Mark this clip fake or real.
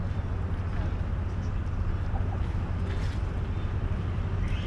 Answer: real